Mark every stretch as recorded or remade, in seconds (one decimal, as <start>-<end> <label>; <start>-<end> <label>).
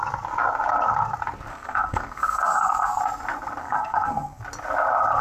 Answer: 0.0-1.5 recorded; 1.5-3.0 remade; 3.0-3.6 recorded; 3.6-4.4 remade; 4.4-5.2 recorded